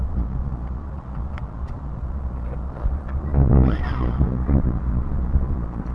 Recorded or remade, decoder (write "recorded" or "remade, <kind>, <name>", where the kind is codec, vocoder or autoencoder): remade, vocoder, Vocos